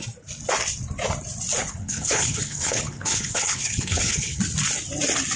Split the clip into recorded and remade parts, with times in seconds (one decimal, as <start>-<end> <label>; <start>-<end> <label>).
0.0-1.7 recorded; 1.7-4.4 remade; 4.4-5.4 recorded